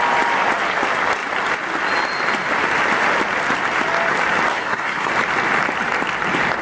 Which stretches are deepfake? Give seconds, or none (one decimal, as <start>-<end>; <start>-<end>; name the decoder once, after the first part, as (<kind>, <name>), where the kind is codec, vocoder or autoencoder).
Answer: 4.5-5.1 (codec, SNAC)